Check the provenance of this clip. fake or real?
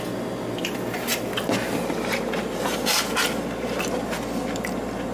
real